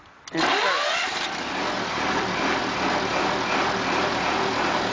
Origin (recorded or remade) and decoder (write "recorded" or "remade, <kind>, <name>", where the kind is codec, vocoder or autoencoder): recorded